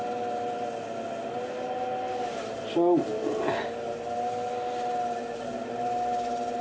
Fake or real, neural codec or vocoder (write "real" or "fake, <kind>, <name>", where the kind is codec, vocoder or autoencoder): real